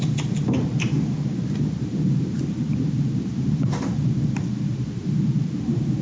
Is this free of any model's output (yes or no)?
no